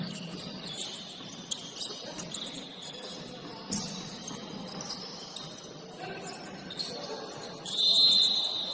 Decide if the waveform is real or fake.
real